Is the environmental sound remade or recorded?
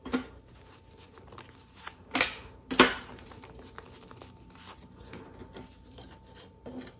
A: recorded